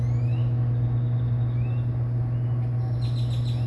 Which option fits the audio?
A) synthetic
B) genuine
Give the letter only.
B